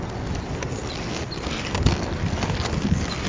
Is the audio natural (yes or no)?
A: yes